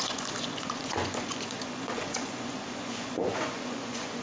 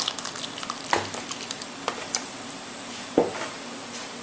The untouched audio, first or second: second